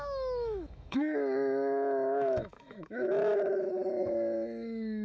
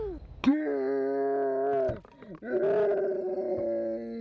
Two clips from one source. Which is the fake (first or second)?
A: first